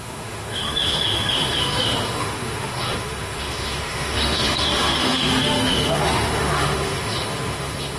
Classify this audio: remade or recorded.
remade